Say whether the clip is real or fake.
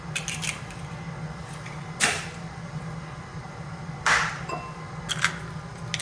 real